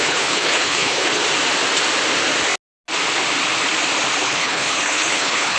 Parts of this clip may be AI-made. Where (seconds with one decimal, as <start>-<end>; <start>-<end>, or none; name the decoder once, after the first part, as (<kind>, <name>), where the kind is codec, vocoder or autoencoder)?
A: 0.0-1.2 (codec, HILCodec); 4.2-5.6

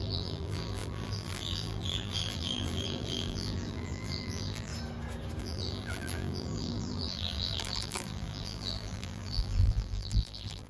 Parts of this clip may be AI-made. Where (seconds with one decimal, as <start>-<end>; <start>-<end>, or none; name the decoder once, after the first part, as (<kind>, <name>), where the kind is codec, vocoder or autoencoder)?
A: 0.0-4.7 (vocoder, BigVGAN v2); 5.4-10.7

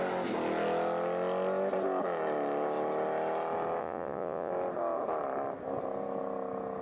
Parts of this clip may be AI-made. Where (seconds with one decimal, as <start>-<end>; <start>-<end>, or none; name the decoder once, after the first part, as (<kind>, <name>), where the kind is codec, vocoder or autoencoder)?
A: 3.8-4.5 (vocoder, Vocos)

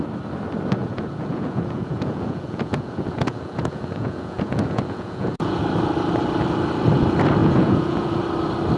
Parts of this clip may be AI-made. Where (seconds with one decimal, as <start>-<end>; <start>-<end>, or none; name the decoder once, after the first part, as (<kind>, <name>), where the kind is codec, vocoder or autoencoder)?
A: 0.8-5.6 (vocoder, Vocos); 7.4-8.2

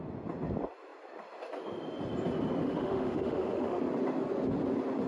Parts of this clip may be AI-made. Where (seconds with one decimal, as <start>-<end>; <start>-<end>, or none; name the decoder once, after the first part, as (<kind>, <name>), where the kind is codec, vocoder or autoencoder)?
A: 2.6-3.8 (autoencoder, DAC-VAE)

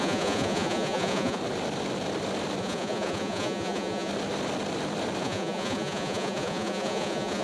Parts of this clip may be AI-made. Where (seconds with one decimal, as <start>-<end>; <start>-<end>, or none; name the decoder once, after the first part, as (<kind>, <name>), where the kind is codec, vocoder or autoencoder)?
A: 0.0-1.4 (vocoder, Vocos); 2.6-4.1; 5.2-7.4